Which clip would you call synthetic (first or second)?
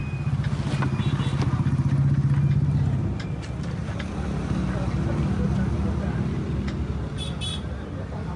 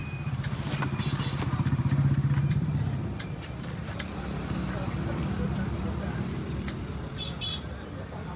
second